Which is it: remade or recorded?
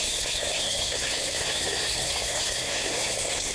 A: remade